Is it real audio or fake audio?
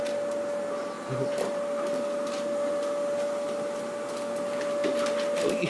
real